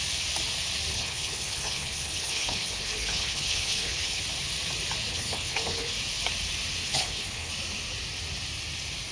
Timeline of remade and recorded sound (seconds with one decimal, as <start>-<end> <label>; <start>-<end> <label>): 0.0-0.9 recorded; 0.9-4.2 remade; 4.2-5.1 recorded; 5.1-5.9 remade; 5.9-6.8 recorded; 6.8-7.5 remade; 7.5-9.1 recorded